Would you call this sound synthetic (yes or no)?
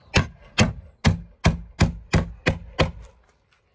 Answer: no